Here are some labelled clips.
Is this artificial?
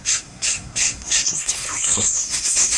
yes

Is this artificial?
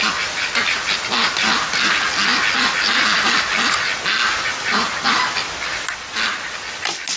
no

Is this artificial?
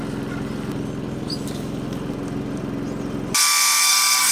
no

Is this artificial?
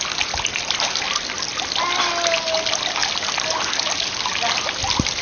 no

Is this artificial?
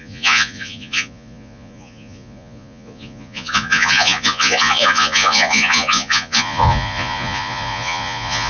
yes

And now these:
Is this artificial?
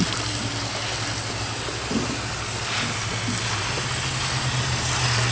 no